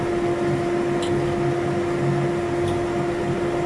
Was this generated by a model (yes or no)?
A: no